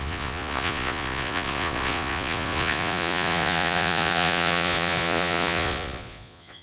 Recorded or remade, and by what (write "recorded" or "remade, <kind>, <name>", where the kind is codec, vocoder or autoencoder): remade, vocoder, Vocos